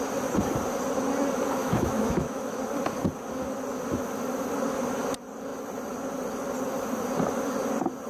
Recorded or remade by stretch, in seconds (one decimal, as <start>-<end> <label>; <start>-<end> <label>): 0.0-1.6 recorded; 1.6-2.6 remade; 2.6-8.1 recorded